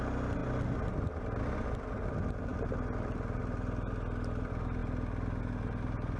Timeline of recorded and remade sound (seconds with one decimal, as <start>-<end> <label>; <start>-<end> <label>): 0.0-6.2 recorded